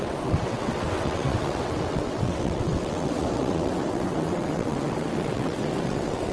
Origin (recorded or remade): remade